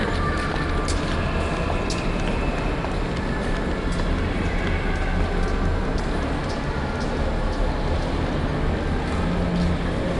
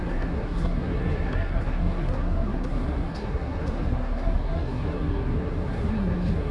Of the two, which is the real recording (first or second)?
first